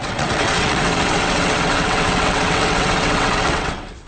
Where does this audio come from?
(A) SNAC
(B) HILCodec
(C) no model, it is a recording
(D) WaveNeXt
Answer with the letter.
D